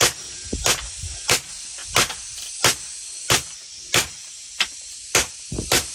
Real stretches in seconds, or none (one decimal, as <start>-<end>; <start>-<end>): 0.0-5.9